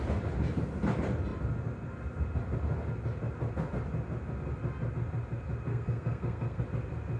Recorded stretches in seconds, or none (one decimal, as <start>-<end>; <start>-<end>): 0.0-5.7; 6.6-7.2

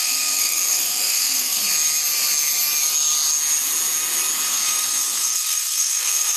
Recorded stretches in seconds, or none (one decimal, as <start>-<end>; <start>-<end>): 1.6-4.5

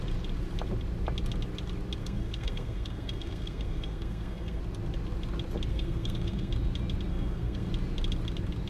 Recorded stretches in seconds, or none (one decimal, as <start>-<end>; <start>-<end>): 0.0-2.0; 4.6-5.7; 6.5-7.1; 7.7-8.7

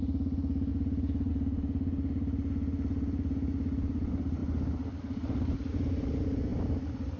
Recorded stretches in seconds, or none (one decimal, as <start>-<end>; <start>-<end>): 0.0-7.2

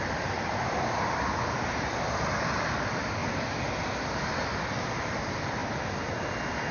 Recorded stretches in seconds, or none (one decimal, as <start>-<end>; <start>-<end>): 0.0-5.6; 6.3-6.7

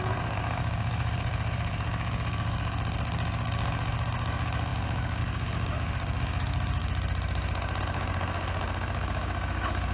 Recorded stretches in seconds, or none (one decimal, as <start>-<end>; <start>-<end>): 6.8-7.8

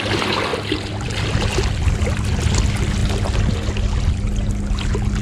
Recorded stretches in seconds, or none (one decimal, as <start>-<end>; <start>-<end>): 0.0-5.2